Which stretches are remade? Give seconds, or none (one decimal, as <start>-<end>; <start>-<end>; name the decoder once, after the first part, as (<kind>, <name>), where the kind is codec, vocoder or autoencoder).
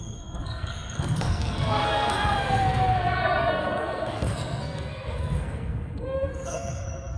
0.0-7.2 (codec, SNAC)